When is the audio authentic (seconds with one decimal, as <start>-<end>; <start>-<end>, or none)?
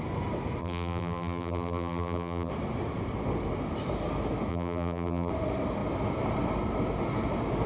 0.0-0.6; 2.5-4.5; 5.3-7.7